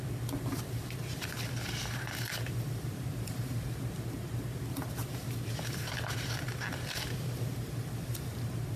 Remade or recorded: remade